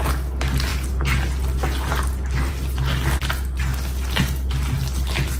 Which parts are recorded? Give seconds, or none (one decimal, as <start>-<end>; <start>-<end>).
0.0-5.4